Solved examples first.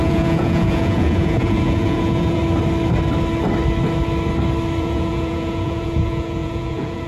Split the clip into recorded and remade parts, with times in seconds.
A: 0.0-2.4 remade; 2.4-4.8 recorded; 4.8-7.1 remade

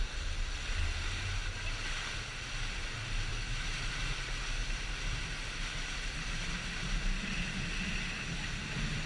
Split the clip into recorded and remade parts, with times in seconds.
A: 0.0-4.6 recorded; 4.6-6.3 remade; 6.3-9.1 recorded

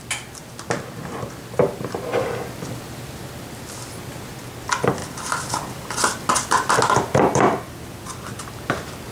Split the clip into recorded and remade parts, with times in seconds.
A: 0.0-5.0 recorded; 5.0-8.5 remade; 8.5-9.1 recorded

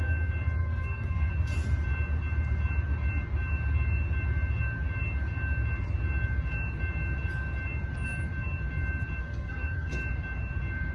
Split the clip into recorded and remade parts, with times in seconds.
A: 0.0-0.6 recorded; 0.6-1.3 remade; 1.3-9.2 recorded; 9.2-9.9 remade; 9.9-10.9 recorded